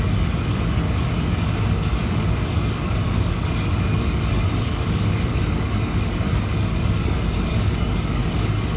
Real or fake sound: fake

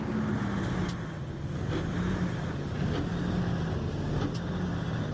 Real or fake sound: real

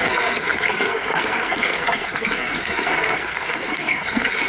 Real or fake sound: fake